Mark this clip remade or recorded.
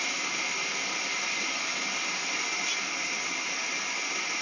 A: recorded